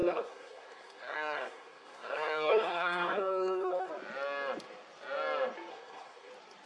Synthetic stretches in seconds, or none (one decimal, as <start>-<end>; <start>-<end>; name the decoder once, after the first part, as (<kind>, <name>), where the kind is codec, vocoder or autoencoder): 0.0-3.9 (codec, SNAC); 5.7-6.3